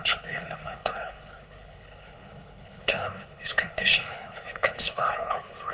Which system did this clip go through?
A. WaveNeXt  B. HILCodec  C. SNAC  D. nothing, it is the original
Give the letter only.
B